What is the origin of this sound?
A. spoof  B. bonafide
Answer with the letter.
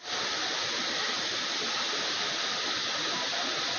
B